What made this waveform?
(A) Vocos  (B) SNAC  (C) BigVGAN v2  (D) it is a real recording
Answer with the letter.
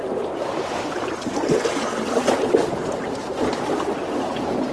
D